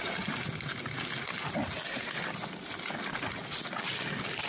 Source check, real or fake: real